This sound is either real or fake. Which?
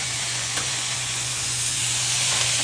fake